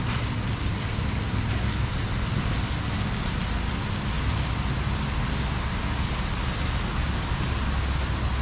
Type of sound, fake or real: real